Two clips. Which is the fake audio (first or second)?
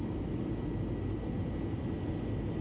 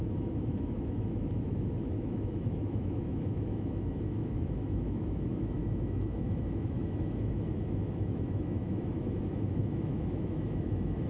second